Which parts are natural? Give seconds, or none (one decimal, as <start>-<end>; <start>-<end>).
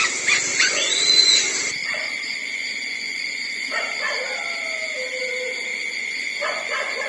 0.0-0.5; 1.4-1.8; 4.1-5.7